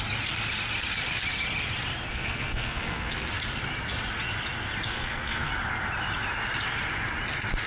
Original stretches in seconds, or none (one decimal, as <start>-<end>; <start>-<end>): 0.0-2.1; 3.3-4.9; 5.5-7.7